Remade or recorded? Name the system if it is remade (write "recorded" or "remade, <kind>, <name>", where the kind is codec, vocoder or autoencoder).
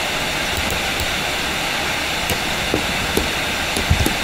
recorded